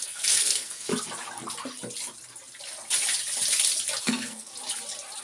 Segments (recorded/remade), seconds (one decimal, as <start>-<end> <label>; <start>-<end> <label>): 0.0-0.9 remade; 0.9-4.0 recorded; 4.0-4.5 remade; 4.5-5.2 recorded